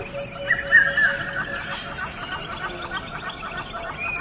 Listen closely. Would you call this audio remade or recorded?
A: recorded